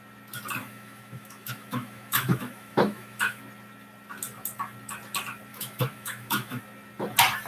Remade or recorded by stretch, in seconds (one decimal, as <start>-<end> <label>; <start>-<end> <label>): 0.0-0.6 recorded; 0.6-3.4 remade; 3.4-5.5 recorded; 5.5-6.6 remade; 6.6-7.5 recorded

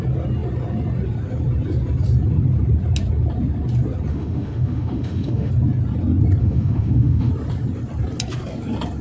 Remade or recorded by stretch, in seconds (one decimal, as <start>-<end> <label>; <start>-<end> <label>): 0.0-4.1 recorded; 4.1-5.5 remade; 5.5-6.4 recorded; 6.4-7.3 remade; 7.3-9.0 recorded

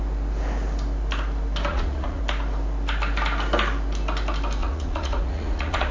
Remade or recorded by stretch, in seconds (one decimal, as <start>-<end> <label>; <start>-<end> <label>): 0.0-1.7 recorded; 1.7-2.2 remade; 2.2-4.6 recorded; 4.6-5.9 remade

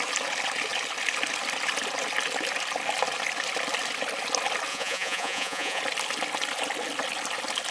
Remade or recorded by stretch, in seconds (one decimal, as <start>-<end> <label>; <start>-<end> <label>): 0.0-4.7 recorded; 4.7-5.8 remade; 5.8-7.7 recorded

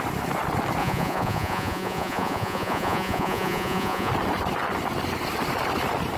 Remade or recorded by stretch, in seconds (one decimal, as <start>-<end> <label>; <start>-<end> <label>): 0.0-0.8 recorded; 0.8-4.1 remade; 4.1-6.2 recorded